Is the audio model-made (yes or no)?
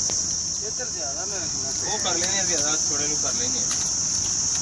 no